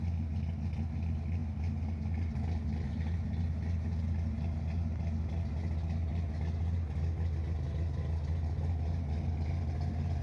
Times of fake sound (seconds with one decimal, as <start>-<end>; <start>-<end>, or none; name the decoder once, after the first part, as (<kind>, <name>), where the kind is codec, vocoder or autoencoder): none